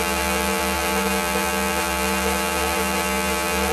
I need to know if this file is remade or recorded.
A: remade